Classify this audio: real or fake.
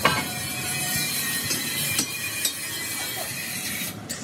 fake